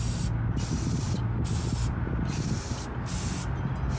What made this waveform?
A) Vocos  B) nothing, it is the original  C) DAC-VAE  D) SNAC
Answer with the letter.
B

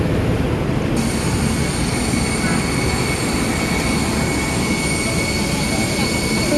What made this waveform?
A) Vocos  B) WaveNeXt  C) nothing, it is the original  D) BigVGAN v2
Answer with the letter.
C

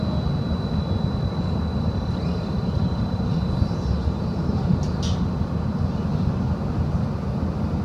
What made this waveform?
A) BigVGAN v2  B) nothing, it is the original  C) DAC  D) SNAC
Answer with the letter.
B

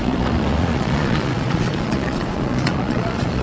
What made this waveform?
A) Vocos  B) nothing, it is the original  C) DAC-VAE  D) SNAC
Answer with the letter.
A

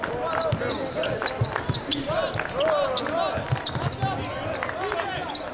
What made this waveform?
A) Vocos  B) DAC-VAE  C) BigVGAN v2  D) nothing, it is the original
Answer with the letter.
D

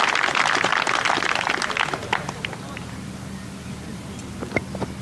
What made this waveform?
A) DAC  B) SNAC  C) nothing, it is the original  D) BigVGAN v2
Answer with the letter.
C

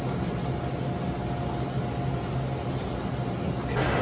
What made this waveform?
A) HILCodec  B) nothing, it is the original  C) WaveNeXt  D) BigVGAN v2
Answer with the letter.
B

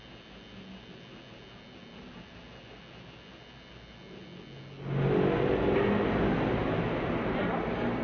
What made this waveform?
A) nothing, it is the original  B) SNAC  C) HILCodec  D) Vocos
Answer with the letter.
A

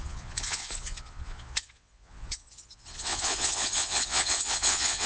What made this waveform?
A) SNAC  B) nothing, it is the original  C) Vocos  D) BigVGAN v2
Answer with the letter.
C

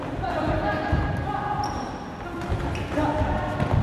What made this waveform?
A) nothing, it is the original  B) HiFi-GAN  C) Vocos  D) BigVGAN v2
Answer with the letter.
A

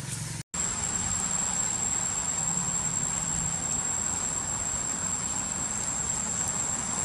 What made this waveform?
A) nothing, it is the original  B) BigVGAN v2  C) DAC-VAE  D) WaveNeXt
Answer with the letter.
A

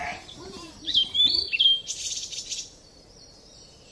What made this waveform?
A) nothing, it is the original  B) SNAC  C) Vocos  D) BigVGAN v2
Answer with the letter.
D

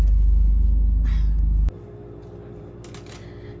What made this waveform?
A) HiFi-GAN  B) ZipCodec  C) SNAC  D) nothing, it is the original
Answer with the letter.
D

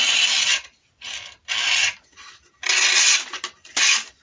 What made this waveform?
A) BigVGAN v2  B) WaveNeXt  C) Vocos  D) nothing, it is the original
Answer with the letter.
D